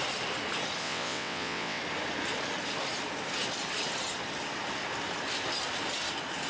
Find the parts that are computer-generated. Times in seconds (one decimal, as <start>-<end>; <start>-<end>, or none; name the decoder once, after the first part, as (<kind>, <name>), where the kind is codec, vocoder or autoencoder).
0.8-1.8 (vocoder, WaveNeXt)

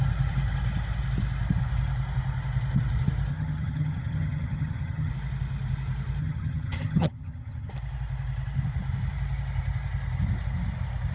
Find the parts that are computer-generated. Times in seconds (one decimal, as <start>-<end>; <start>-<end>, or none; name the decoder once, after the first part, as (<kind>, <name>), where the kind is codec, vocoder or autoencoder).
3.3-5.1 (vocoder, HiFi-GAN); 6.2-7.7

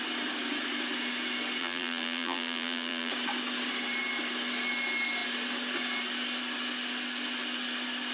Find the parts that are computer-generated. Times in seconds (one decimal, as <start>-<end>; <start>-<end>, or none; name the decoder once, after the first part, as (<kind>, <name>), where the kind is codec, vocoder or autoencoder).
1.6-3.1 (vocoder, BigVGAN v2)